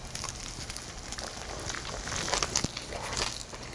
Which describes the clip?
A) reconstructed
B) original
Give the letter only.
B